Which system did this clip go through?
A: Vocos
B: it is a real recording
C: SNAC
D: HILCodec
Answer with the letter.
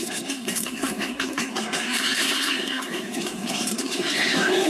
C